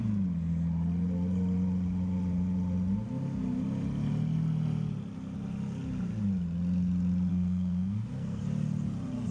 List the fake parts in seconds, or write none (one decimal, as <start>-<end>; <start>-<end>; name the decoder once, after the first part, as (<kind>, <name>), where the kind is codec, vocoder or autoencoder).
7.3-8.4 (codec, SNAC)